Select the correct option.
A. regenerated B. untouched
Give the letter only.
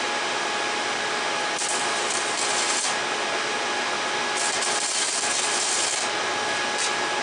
B